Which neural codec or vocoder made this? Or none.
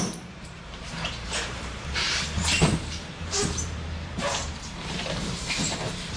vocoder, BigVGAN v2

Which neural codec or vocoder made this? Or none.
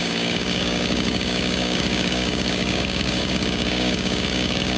codec, DAC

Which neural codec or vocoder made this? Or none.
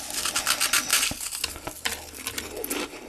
none